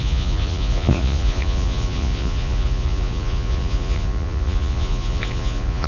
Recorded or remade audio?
remade